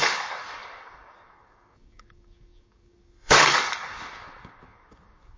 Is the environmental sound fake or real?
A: fake